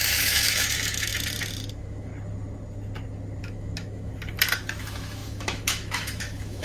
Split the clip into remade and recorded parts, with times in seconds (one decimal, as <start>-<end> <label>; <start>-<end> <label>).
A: 0.0-1.1 remade; 1.1-1.7 recorded; 1.7-2.1 remade; 2.1-3.4 recorded; 3.4-4.1 remade; 4.1-4.8 recorded; 4.8-6.6 remade